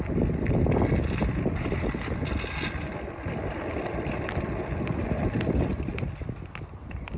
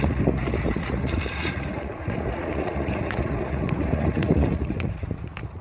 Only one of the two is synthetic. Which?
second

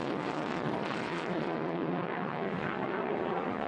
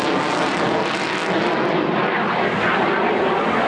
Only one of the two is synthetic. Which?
first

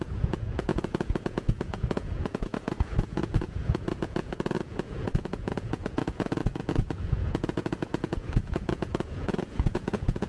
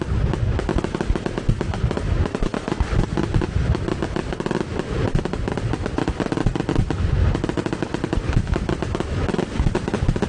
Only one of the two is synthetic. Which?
first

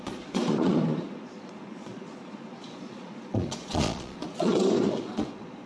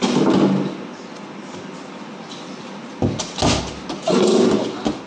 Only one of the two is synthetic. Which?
first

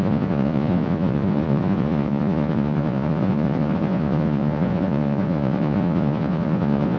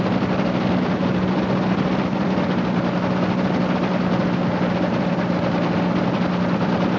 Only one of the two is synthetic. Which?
first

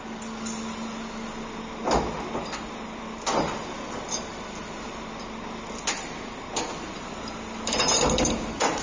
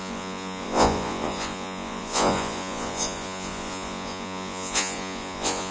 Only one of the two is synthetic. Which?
second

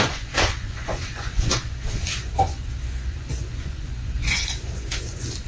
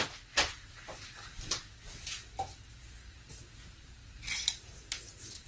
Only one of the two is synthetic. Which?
first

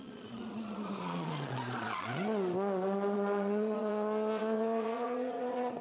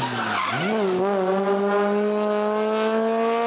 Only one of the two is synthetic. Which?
first